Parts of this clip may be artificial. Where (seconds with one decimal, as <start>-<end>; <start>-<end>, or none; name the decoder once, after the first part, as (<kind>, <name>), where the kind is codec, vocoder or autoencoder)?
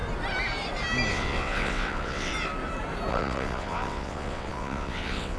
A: 1.1-2.3 (vocoder, WaveNeXt); 3.1-5.4